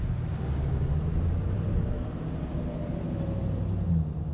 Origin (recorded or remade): recorded